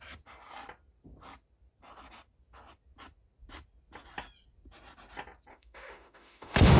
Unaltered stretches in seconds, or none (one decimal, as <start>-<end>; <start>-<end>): 0.0-5.5